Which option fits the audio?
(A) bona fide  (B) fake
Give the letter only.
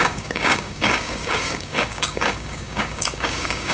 B